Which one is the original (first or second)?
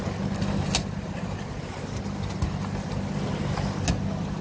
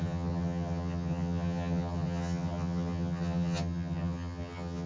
first